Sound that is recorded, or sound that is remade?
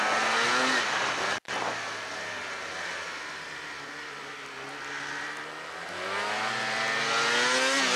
recorded